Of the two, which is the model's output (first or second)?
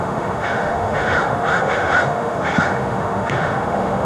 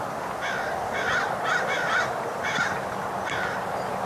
first